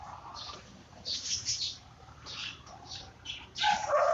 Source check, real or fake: fake